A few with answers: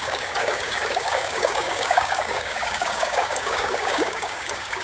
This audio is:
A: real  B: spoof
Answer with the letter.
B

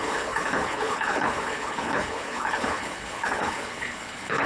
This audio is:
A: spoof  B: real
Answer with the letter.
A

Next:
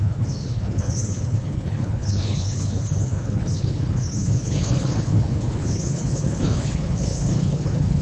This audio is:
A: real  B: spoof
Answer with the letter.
B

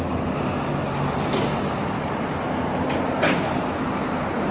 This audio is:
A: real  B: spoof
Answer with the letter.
A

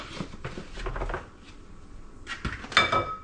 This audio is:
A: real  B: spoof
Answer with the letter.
A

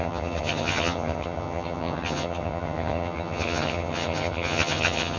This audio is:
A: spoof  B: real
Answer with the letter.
A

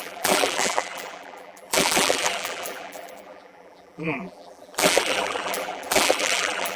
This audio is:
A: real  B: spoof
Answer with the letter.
B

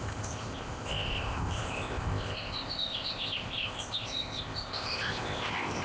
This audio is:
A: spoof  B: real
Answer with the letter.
A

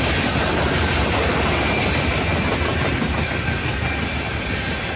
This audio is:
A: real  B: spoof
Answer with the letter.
B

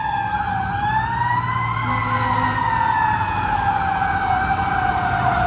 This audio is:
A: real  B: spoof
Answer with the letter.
A